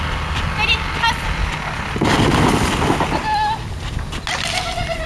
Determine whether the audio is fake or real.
real